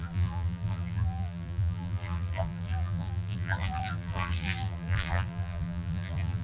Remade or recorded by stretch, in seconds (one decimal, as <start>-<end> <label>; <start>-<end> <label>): 0.0-6.4 remade